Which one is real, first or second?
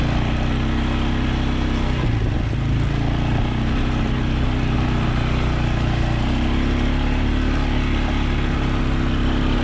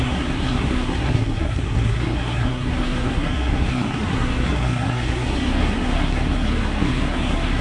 first